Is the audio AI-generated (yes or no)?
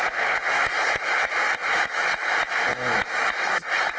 yes